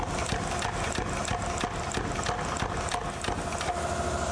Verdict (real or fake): real